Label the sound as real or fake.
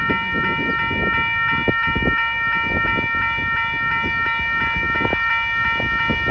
real